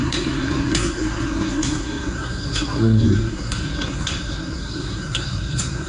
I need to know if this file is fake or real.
fake